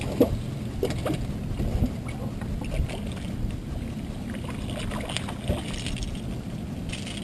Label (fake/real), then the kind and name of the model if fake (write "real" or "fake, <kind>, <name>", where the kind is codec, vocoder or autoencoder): real